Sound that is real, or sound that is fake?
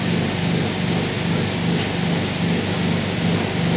real